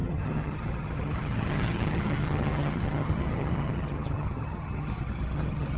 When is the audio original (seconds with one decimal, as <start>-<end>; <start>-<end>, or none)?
none